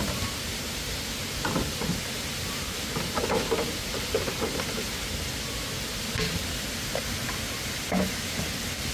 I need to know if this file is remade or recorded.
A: recorded